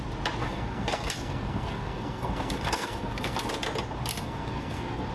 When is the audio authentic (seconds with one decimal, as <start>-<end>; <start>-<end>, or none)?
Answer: 0.0-0.4; 3.5-4.1